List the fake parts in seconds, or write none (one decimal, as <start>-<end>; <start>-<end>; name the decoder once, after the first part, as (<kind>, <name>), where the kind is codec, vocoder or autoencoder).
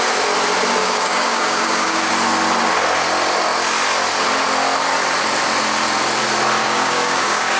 0.8-2.1 (codec, DAC); 6.6-7.6